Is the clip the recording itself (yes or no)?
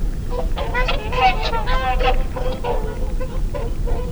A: no